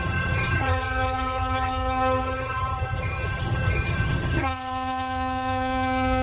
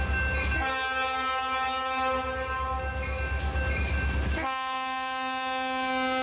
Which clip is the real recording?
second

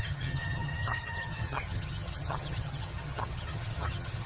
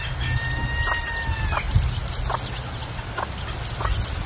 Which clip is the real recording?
second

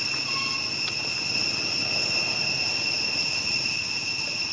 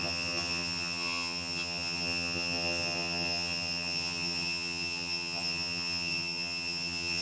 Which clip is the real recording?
first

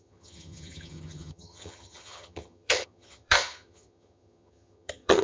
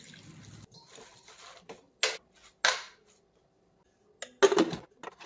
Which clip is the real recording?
second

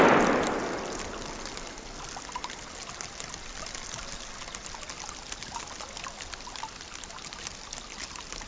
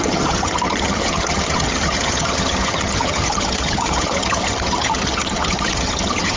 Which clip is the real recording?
first